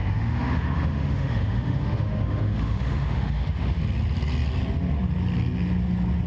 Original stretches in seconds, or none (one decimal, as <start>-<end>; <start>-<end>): 3.8-6.3